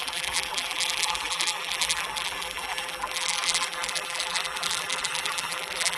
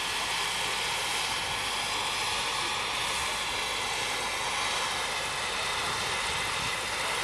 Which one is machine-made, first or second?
first